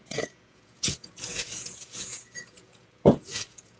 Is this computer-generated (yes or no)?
yes